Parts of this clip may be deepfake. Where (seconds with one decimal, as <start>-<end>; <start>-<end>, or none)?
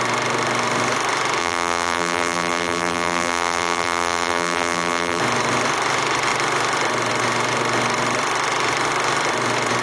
1.4-5.2